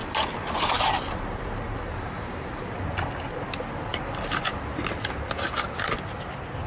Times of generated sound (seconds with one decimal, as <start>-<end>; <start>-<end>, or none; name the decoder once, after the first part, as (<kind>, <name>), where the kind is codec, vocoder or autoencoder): 0.0-2.6 (vocoder, BigVGAN v2)